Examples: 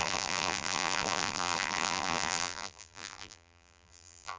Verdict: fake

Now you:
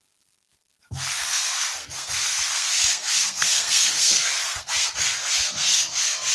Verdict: fake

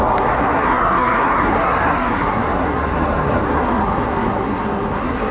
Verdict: fake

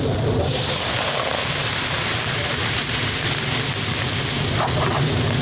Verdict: fake